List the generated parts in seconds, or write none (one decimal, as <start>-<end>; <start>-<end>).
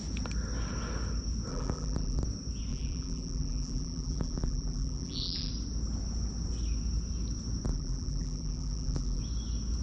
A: 1.5-2.2; 2.7-5.5; 7.7-9.2